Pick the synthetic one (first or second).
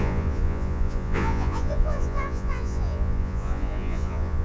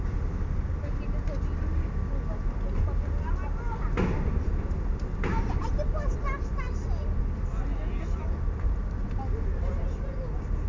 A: first